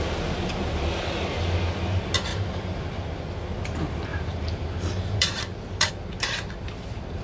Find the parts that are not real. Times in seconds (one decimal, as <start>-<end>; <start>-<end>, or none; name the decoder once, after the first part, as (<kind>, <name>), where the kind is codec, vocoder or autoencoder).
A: 2.3-2.9 (vocoder, BigVGAN v2); 4.1-5.9